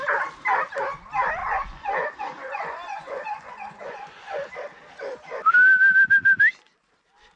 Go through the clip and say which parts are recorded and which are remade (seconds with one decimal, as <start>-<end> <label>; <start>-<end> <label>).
0.0-1.4 recorded; 1.4-4.5 remade; 4.5-7.4 recorded